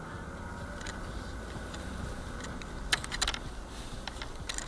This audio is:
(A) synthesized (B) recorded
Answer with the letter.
B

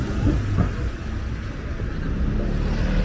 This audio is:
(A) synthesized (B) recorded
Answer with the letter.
B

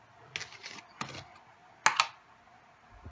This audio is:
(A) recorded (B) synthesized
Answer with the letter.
A